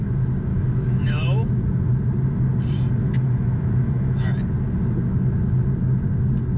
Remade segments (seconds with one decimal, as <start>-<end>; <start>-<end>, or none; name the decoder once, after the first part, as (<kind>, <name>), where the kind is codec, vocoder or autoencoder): 0.5-1.9 (autoencoder, DAC-VAE); 3.0-4.3